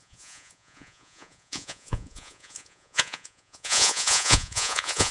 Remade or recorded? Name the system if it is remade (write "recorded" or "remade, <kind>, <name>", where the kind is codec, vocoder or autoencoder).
remade, vocoder, Vocos